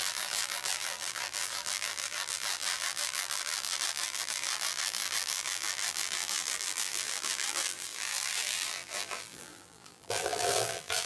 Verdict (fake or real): fake